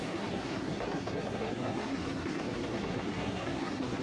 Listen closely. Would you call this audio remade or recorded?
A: remade